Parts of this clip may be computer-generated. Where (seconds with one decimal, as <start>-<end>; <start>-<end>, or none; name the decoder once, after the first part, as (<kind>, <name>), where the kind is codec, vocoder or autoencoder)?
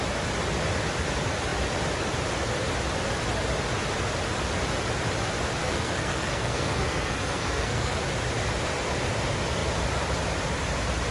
5.6-8.0 (codec, SNAC)